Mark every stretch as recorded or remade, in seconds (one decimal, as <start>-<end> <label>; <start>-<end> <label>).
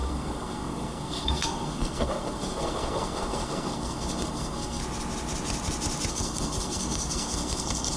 0.0-4.8 remade; 4.8-6.1 recorded; 6.1-8.0 remade